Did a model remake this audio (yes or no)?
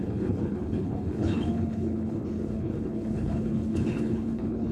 yes